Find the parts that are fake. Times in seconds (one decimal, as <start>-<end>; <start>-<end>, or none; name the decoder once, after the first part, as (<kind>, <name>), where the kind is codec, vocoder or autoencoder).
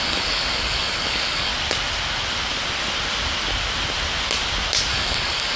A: 0.0-1.5 (codec, DAC); 4.9-5.6